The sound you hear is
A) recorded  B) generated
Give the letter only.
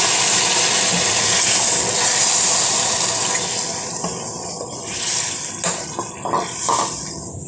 A